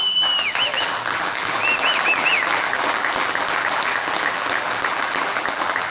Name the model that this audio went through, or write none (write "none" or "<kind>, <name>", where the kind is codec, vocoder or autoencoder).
vocoder, BigVGAN v2